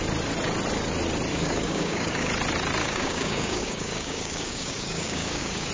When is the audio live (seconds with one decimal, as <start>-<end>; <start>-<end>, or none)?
0.0-1.3; 2.3-2.8